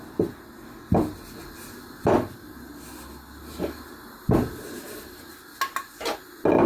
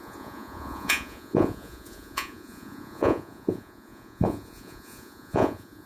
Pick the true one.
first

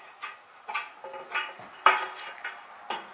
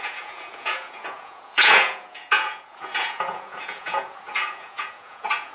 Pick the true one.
first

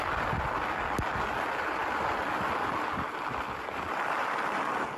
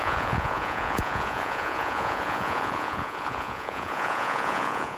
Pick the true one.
first